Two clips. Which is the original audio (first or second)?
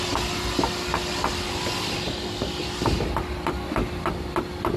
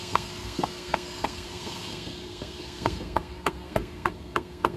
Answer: first